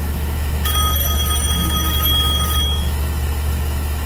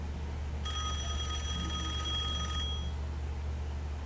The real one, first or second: second